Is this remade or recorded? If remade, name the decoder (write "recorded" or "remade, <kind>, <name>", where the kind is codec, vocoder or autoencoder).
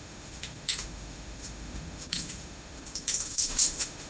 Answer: remade, autoencoder, DAC-VAE